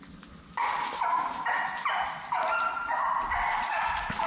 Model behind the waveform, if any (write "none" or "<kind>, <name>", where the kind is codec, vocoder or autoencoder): none